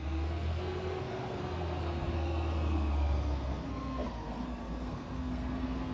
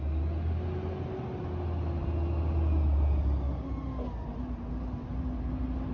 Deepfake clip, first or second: first